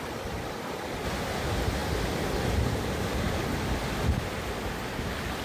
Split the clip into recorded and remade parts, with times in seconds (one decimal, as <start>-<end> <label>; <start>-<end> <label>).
0.0-5.4 recorded